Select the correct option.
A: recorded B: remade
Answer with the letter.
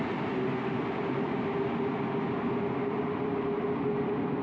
A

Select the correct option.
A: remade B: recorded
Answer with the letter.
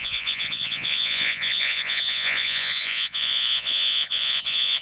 A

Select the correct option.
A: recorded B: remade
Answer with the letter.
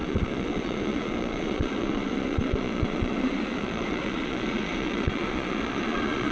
B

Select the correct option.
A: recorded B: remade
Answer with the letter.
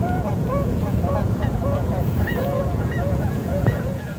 B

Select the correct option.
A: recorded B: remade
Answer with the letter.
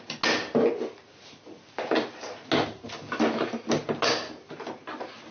A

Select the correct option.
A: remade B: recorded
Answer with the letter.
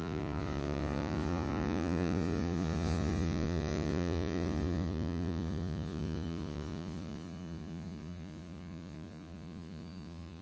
A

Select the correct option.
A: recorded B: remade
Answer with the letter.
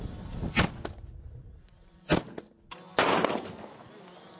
A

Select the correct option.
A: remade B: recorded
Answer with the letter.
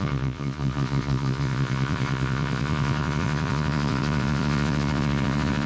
A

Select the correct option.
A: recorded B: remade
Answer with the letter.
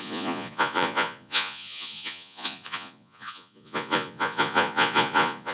B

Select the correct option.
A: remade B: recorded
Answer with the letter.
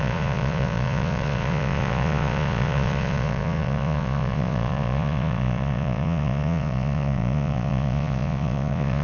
A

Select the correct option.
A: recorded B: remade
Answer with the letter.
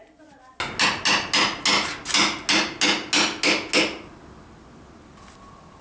A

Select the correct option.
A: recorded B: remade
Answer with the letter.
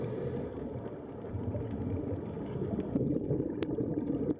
A